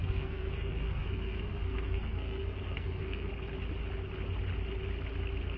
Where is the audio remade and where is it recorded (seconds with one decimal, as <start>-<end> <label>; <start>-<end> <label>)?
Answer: 0.0-3.3 remade; 3.3-5.6 recorded